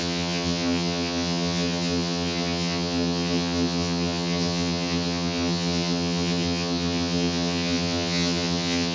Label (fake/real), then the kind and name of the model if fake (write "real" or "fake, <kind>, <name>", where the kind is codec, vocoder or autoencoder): fake, vocoder, HiFi-GAN